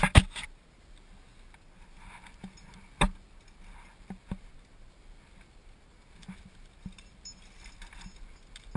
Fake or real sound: real